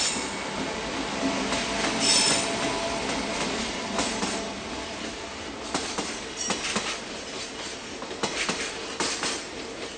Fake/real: real